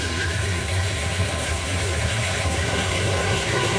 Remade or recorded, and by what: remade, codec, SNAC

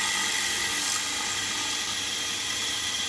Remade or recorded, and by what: recorded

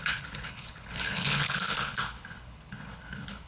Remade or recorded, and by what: remade, codec, HILCodec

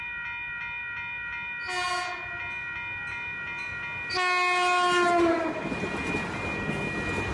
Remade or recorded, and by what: recorded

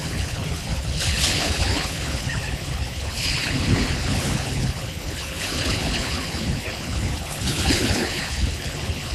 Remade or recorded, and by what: remade, codec, HILCodec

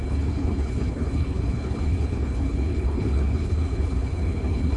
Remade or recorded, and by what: remade, codec, HILCodec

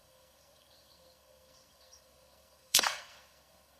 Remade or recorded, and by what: remade, codec, SNAC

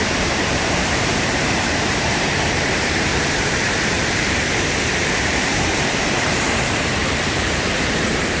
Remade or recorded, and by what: remade, vocoder, BigVGAN v2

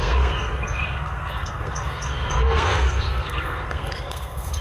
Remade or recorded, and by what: remade, codec, SNAC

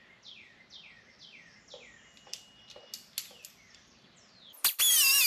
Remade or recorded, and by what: recorded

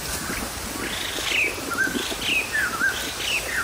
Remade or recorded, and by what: recorded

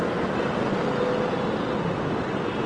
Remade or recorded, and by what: recorded